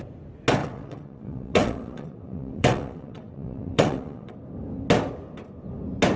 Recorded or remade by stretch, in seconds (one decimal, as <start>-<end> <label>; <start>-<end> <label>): 0.0-0.6 recorded; 0.6-4.3 remade; 4.3-6.2 recorded